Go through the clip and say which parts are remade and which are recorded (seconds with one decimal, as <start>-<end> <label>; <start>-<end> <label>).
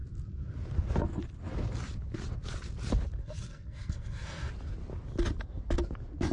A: 0.0-3.2 recorded; 3.2-4.5 remade; 4.5-6.3 recorded